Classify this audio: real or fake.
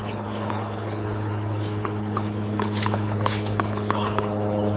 fake